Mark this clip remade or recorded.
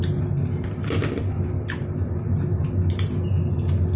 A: recorded